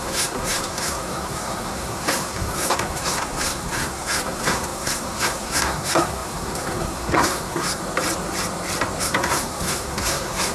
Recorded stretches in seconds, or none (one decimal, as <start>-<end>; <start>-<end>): 7.8-9.0